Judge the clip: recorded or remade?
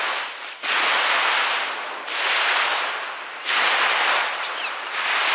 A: recorded